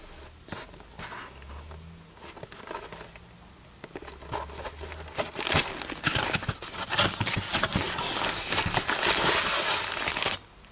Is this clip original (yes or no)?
yes